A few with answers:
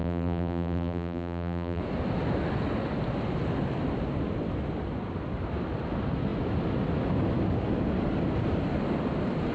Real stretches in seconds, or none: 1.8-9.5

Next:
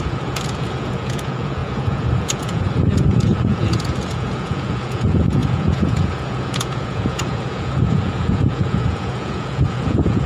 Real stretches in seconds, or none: none

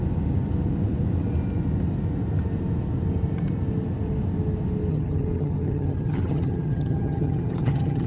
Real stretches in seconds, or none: 0.0-4.9